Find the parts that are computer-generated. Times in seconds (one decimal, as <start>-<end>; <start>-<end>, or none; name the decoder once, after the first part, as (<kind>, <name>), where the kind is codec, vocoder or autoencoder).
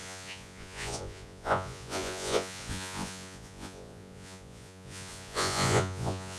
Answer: 0.0-6.4 (vocoder, Vocos)